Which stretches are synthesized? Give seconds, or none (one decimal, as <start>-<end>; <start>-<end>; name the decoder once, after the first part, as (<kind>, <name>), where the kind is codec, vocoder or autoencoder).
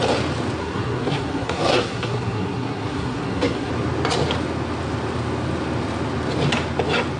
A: 0.6-3.7 (codec, SNAC)